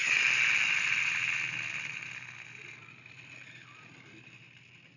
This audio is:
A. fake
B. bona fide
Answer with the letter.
B